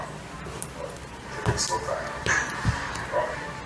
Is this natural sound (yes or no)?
yes